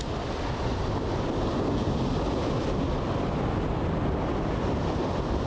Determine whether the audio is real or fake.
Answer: real